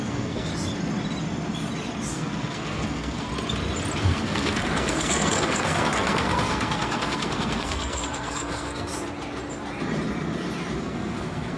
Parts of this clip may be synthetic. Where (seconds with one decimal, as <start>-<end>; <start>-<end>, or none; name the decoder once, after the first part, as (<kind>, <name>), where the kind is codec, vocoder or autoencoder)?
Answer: 0.0-0.5 (codec, SNAC); 2.1-3.3; 4.0-8.9; 10.8-11.6